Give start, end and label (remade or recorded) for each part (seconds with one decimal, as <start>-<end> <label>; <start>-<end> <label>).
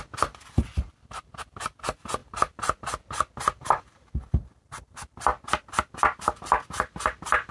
0.0-7.5 recorded